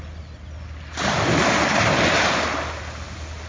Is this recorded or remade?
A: recorded